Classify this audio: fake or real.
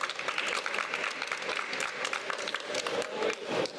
real